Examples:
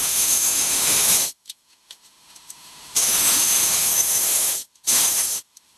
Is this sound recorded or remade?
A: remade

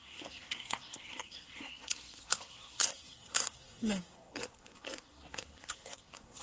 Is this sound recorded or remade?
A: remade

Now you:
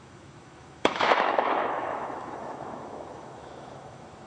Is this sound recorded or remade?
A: remade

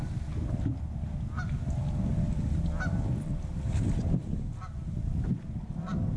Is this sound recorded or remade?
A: recorded